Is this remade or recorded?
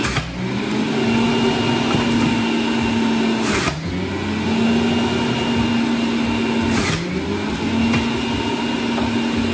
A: recorded